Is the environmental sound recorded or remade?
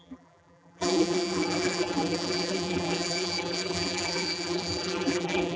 remade